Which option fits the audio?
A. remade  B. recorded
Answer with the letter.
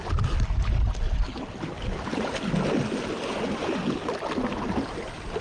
B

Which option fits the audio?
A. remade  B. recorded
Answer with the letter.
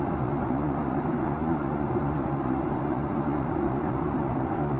A